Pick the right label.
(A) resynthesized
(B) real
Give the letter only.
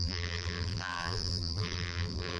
A